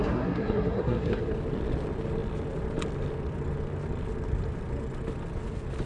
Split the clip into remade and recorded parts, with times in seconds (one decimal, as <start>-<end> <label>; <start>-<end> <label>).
0.0-1.3 remade; 1.3-5.9 recorded